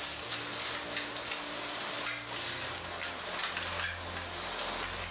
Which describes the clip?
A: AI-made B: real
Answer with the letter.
B